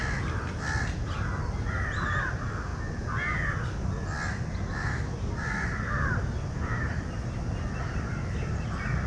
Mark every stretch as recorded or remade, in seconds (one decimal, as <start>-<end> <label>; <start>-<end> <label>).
0.0-2.3 recorded; 2.3-2.7 remade; 2.7-6.5 recorded; 6.5-9.1 remade